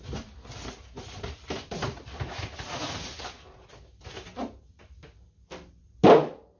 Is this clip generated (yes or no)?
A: no